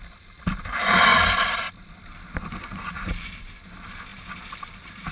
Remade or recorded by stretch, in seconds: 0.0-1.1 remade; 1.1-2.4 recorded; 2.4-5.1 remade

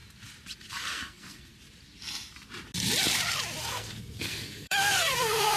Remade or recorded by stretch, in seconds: 0.0-0.7 recorded; 0.7-1.5 remade; 1.5-3.6 recorded; 3.6-5.6 remade

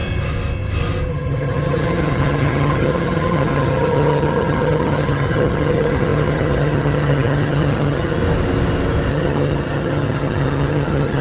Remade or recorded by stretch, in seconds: 0.0-1.1 recorded; 1.1-8.2 remade; 8.2-9.1 recorded; 9.1-11.2 remade

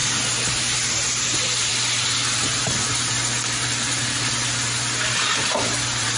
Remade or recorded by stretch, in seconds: 0.0-0.6 recorded; 0.6-1.7 remade; 1.7-5.1 recorded; 5.1-6.2 remade

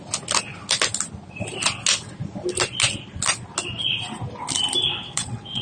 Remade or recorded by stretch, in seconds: 0.0-4.9 recorded; 4.9-5.6 remade